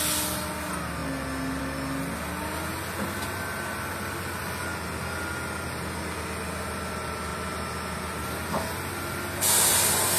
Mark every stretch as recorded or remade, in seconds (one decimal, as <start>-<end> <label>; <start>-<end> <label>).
0.0-10.2 recorded